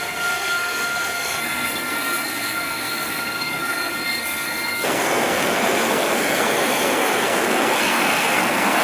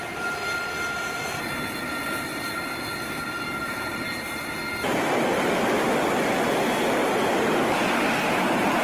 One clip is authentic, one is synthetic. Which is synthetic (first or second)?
first